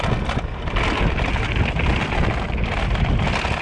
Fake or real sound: real